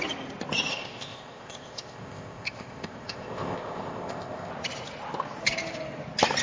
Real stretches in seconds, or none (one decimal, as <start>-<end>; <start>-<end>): 0.0-0.7; 4.5-6.4

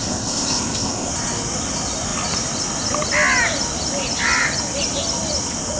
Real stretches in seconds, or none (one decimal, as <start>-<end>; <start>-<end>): 1.1-5.8

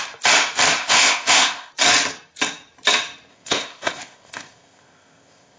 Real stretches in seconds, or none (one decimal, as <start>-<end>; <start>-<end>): 0.0-0.8; 1.7-3.3